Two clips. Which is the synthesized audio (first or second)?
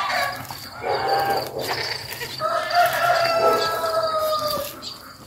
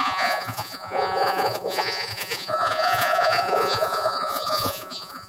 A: second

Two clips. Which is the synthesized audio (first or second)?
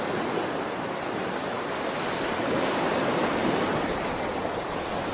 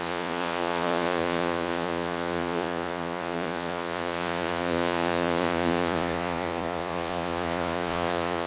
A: second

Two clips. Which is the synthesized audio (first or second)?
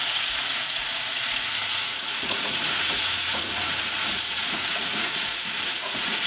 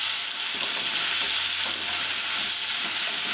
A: first